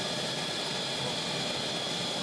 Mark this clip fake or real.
real